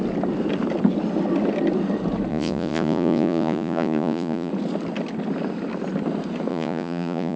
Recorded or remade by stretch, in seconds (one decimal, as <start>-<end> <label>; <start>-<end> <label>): 0.0-2.3 recorded; 2.3-4.5 remade; 4.5-6.5 recorded; 6.5-7.4 remade